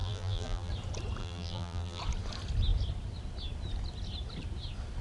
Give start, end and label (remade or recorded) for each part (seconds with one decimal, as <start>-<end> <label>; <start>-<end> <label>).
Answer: 0.0-0.7 remade; 0.7-1.2 recorded; 1.2-2.0 remade; 2.0-5.0 recorded